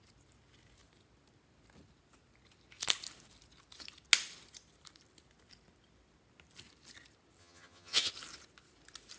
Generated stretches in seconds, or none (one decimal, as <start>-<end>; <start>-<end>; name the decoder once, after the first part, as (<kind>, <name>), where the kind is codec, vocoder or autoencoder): 7.4-8.1 (vocoder, HiFi-GAN)